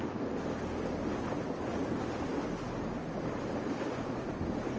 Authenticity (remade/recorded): recorded